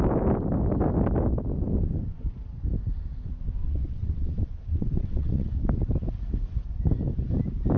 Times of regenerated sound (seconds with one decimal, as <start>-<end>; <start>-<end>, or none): 3.6-5.5